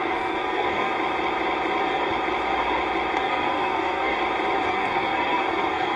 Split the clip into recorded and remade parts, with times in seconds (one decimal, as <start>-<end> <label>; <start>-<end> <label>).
0.0-0.9 remade; 0.9-3.3 recorded; 3.3-4.1 remade; 4.1-4.7 recorded; 4.7-6.0 remade